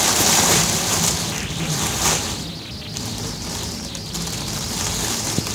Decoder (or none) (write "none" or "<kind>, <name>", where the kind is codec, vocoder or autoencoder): none